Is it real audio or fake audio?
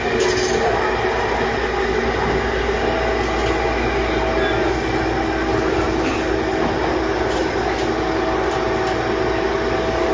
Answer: real